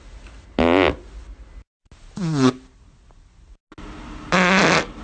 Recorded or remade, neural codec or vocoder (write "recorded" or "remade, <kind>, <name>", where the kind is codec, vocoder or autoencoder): recorded